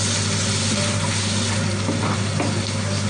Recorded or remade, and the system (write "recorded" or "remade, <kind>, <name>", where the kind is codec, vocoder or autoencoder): recorded